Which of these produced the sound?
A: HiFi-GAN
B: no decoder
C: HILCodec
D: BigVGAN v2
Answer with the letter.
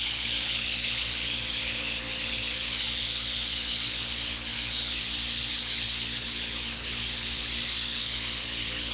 C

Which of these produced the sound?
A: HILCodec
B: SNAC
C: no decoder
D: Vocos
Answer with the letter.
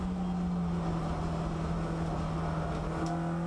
C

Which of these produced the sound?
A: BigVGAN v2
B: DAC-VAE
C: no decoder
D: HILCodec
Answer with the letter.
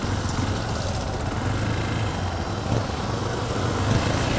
C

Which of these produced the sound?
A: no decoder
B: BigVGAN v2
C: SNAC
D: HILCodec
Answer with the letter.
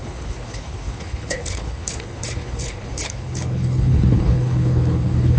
D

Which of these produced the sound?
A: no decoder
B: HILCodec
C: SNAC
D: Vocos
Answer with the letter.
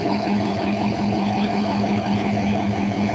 B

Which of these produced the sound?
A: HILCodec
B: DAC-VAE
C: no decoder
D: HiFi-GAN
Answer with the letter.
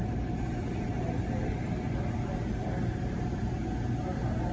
C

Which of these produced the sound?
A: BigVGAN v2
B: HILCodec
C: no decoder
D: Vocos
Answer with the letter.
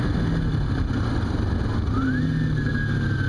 C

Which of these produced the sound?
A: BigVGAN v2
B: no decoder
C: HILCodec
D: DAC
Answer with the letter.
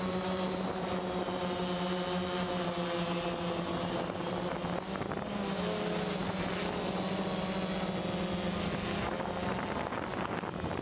B